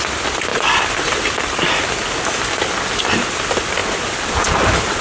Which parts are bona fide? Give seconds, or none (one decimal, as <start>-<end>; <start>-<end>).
0.0-0.5; 2.2-5.0